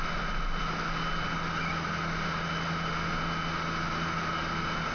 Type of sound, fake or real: real